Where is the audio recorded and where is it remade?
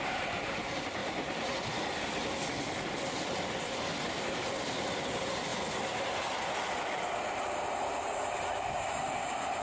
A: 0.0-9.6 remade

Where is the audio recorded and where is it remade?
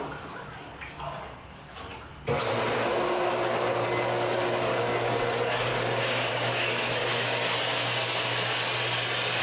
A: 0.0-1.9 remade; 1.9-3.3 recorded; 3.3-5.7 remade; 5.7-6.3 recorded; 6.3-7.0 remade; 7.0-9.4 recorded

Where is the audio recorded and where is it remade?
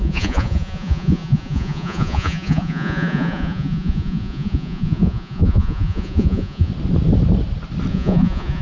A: 0.0-6.7 remade; 6.7-7.9 recorded; 7.9-8.6 remade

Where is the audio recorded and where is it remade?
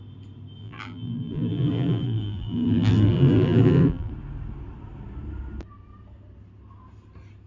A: 0.0-0.6 recorded; 0.6-4.1 remade; 4.1-7.5 recorded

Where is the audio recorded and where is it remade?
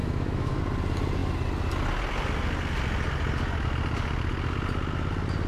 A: 0.0-0.6 remade; 0.6-5.5 recorded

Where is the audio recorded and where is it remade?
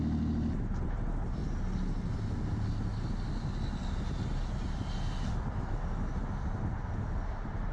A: 0.0-7.7 recorded